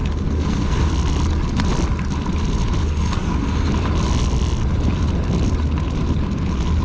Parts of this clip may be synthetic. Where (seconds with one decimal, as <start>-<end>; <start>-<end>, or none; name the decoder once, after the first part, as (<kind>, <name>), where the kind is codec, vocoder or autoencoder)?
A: 0.0-0.9 (codec, SNAC); 2.8-3.7